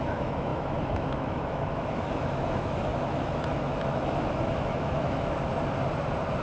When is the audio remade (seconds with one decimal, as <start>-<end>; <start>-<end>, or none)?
0.0-5.5